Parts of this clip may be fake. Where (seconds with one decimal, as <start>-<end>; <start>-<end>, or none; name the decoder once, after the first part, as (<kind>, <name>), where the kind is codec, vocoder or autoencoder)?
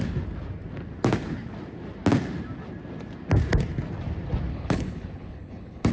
4.5-5.9 (codec, HILCodec)